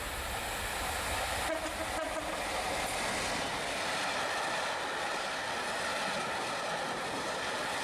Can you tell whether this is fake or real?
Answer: real